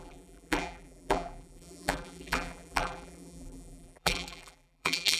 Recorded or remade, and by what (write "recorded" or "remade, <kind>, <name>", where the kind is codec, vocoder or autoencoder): remade, vocoder, BigVGAN v2